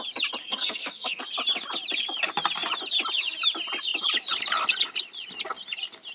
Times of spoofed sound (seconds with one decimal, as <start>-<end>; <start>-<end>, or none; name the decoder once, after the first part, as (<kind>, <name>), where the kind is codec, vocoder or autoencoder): 0.4-1.2 (codec, SNAC)